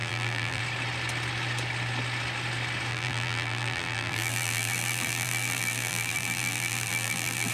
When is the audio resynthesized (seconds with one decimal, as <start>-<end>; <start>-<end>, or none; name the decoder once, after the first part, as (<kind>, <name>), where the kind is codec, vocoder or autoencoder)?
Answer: 0.0-0.6 (vocoder, BigVGAN v2); 2.9-7.5